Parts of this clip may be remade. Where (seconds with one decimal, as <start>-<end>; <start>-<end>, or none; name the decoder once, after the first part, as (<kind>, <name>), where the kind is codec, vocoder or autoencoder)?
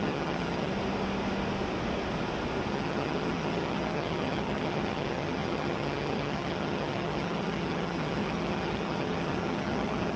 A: 0.0-0.7 (vocoder, HiFi-GAN); 2.7-10.2